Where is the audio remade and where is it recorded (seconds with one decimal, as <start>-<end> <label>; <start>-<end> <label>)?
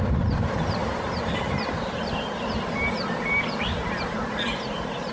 0.0-0.8 recorded; 0.8-3.9 remade; 3.9-5.1 recorded